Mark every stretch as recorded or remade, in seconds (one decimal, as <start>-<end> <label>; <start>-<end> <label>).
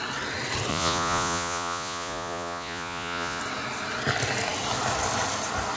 0.0-0.7 recorded; 0.7-3.4 remade; 3.4-5.8 recorded